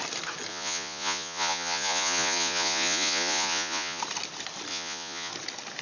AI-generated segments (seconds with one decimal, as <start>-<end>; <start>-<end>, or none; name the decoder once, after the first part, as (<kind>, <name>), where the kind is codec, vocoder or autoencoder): 0.5-4.0 (vocoder, Vocos); 4.7-5.3